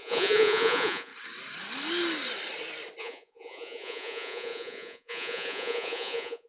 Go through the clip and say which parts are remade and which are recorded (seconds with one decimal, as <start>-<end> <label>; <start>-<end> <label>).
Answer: 0.0-1.1 remade; 1.1-3.0 recorded; 3.0-6.5 remade